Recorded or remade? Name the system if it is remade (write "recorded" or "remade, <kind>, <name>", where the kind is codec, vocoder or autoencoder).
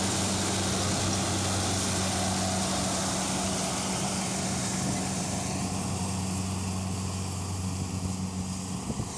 recorded